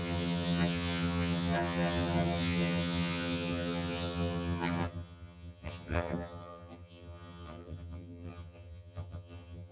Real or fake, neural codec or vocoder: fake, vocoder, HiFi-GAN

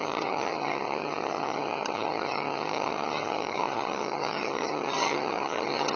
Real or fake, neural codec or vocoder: fake, vocoder, HiFi-GAN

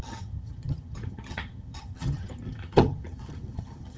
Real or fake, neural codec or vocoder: fake, vocoder, HiFi-GAN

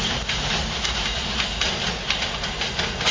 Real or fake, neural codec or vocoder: real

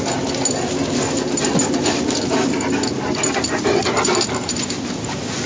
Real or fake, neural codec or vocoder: real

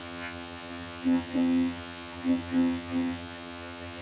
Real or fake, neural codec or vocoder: fake, vocoder, HiFi-GAN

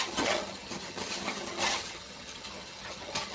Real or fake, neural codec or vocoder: fake, vocoder, HiFi-GAN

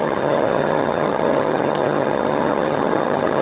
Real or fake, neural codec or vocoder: fake, vocoder, HiFi-GAN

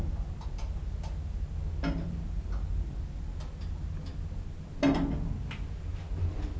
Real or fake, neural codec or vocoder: real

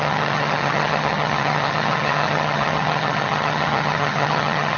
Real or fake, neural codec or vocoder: fake, vocoder, HiFi-GAN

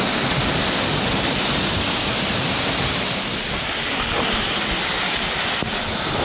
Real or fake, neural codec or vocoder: real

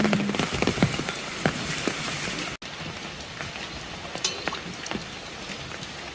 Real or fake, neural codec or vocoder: real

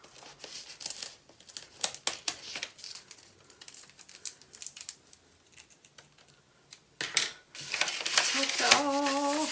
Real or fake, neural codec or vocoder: real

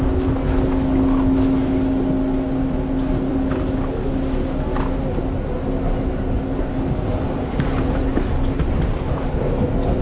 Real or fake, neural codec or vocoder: real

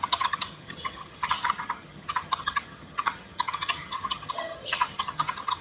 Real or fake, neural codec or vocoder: fake, vocoder, HiFi-GAN